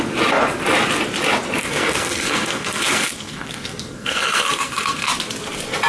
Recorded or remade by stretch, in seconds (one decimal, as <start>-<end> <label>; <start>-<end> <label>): 0.0-1.6 recorded; 1.6-5.1 remade; 5.1-5.9 recorded